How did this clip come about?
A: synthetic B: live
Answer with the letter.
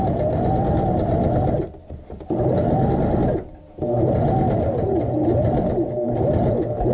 B